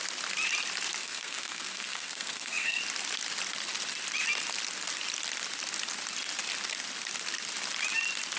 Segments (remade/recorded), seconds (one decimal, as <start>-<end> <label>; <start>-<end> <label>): 0.0-1.0 recorded; 1.0-2.8 remade; 2.8-8.4 recorded

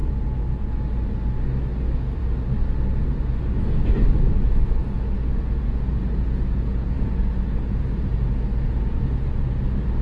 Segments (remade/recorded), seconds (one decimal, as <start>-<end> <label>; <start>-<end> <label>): 0.0-1.4 remade; 1.4-4.8 recorded; 4.8-9.6 remade; 9.6-10.0 recorded

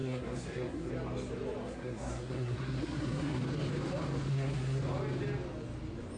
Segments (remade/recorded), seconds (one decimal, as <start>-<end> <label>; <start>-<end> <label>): 0.0-0.9 remade; 0.9-1.6 recorded; 1.6-3.4 remade; 3.4-4.3 recorded; 4.3-4.8 remade; 4.8-6.2 recorded

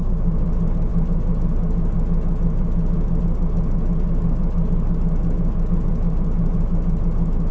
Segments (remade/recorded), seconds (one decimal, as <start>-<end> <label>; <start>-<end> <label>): 0.0-7.5 recorded

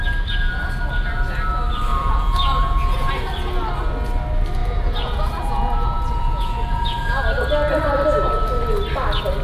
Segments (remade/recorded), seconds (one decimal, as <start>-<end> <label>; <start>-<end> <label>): 0.0-1.9 recorded; 1.9-3.1 remade; 3.1-4.6 recorded; 4.6-7.4 remade; 7.4-9.4 recorded